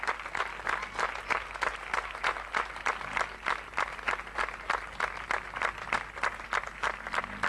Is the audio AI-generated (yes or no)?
no